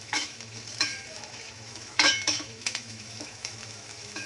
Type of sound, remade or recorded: remade